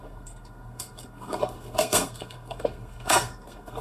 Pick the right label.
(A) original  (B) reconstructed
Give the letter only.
B